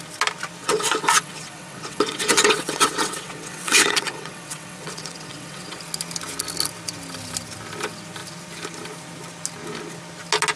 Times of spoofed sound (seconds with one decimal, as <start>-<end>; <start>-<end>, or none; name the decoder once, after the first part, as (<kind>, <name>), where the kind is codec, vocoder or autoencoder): 0.6-5.8 (vocoder, WaveNeXt)

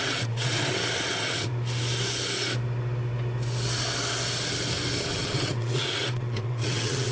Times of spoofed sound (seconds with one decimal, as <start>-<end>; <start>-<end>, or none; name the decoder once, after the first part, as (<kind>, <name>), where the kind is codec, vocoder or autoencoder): 0.0-1.5 (vocoder, WaveNeXt); 5.1-7.1

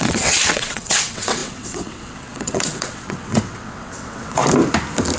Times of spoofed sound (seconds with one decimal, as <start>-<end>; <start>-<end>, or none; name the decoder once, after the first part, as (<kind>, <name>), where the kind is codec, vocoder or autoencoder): 0.0-4.4 (vocoder, WaveNeXt)

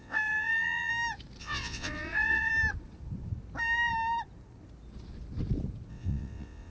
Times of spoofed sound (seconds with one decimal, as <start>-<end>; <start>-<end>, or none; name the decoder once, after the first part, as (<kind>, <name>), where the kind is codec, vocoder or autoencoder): 0.0-0.9 (vocoder, WaveNeXt); 1.4-2.5; 5.9-6.7

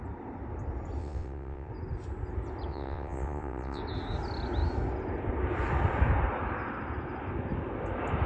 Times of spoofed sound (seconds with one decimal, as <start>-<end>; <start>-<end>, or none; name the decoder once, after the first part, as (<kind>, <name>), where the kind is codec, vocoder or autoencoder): 1.0-1.7 (vocoder, WaveNeXt); 2.7-3.8

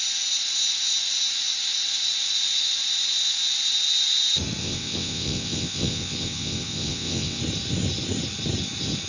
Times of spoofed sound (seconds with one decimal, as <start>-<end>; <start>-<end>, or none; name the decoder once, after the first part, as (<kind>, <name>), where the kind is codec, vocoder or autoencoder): 4.6-7.4 (vocoder, WaveNeXt)